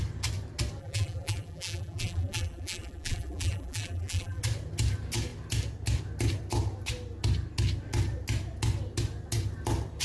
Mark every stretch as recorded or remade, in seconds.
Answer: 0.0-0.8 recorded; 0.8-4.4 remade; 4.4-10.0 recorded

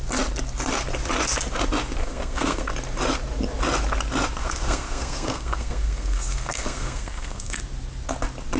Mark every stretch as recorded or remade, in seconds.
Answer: 0.0-2.0 recorded; 2.0-2.7 remade; 2.7-4.4 recorded; 4.4-7.6 remade; 7.6-8.6 recorded

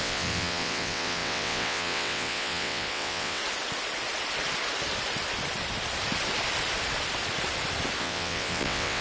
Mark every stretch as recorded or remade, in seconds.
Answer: 0.0-3.4 remade; 3.4-8.0 recorded; 8.0-9.0 remade

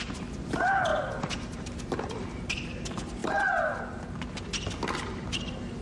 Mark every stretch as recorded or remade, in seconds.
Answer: 0.0-0.9 recorded; 0.9-2.3 remade; 2.3-3.2 recorded; 3.2-3.8 remade; 3.8-5.8 recorded

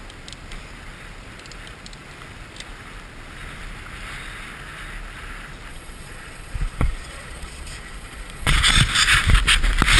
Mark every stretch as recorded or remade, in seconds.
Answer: 0.0-5.7 recorded; 5.7-8.5 remade; 8.5-10.0 recorded

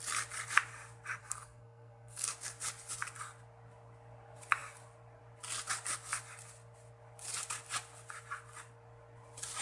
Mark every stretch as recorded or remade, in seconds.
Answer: 0.0-1.2 recorded; 1.2-2.3 remade; 2.3-9.6 recorded

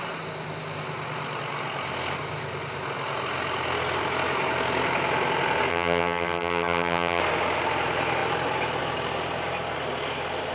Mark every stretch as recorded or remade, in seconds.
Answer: 0.0-5.7 recorded; 5.7-7.2 remade; 7.2-10.5 recorded